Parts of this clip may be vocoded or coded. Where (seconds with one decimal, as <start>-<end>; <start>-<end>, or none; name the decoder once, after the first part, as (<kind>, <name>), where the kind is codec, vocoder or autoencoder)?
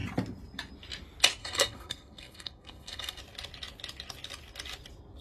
1.4-3.2 (codec, SNAC)